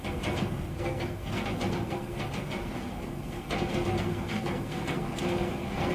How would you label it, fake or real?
fake